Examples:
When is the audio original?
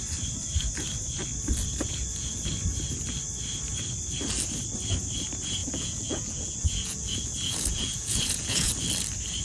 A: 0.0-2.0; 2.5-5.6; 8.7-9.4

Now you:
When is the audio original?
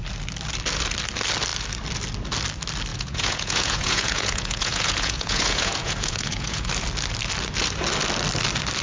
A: 0.0-2.9; 6.7-8.8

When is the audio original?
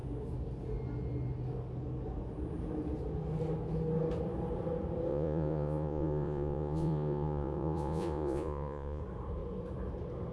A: 0.0-5.1; 9.0-10.3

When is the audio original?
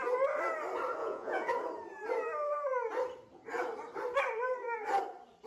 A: 0.0-1.0; 1.5-5.5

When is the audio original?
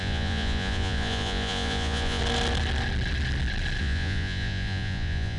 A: 2.2-3.8